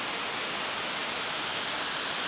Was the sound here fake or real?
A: real